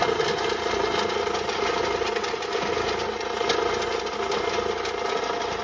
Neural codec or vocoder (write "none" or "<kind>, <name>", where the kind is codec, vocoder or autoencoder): none